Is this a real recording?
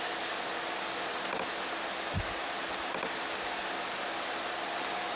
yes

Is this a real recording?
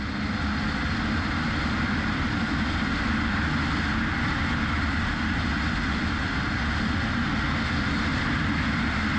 yes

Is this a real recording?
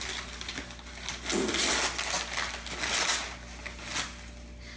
yes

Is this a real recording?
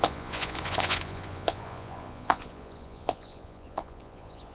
no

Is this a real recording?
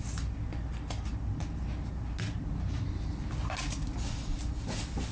yes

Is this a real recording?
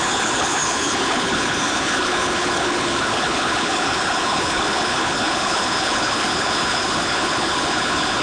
no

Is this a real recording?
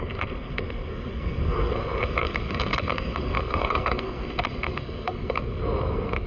no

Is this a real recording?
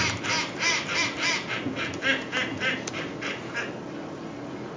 yes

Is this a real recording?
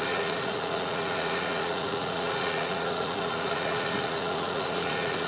no